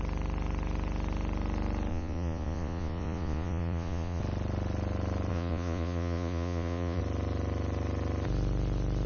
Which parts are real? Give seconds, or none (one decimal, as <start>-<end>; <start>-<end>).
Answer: 0.0-1.9; 4.2-5.3; 7.0-9.1

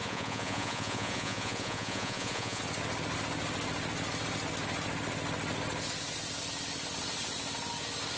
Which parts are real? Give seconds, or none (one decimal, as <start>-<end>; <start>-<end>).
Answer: 2.6-8.2

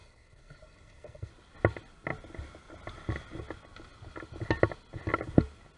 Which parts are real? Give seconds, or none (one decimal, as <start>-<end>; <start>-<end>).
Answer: 1.3-5.8

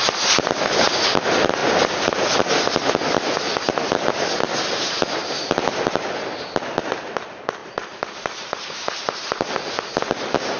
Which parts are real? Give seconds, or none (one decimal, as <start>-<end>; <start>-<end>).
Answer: 0.0-7.6; 8.9-10.6